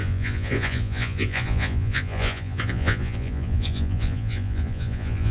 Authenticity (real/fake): fake